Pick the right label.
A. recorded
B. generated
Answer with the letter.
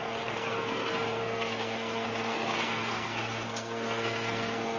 B